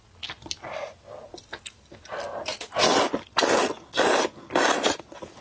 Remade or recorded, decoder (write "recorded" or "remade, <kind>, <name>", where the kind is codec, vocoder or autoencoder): recorded